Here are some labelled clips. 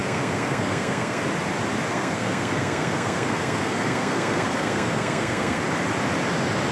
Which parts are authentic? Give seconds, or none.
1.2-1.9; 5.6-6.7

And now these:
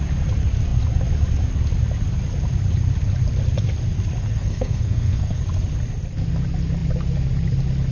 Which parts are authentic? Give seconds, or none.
0.0-4.2; 5.4-7.9

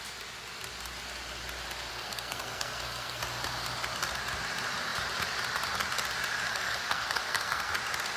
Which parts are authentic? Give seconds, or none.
0.0-1.9; 3.2-6.5; 7.7-8.2

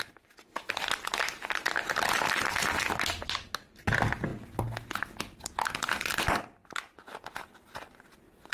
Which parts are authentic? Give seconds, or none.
0.0-8.5

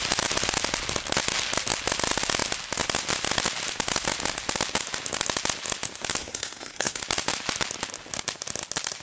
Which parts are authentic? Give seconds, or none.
0.0-6.2; 7.0-9.0